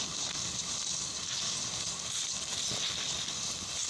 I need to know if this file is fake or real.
fake